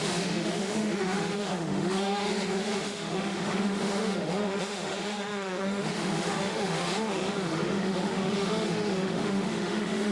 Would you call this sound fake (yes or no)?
yes